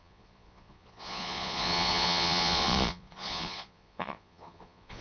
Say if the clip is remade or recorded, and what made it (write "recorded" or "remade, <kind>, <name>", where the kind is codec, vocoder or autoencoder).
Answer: remade, vocoder, Vocos